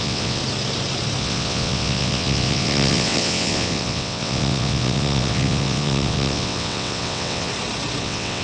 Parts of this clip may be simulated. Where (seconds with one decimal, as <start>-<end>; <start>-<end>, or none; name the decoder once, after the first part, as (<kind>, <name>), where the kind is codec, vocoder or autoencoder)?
0.0-0.4 (vocoder, WaveNeXt); 1.2-7.5; 8.0-8.4